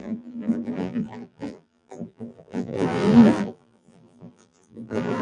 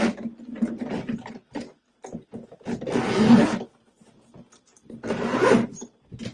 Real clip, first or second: second